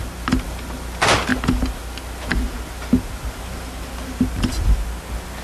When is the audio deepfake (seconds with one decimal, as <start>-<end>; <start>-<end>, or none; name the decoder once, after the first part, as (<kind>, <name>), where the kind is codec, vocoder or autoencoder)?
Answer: none